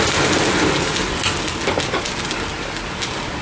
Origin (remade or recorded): recorded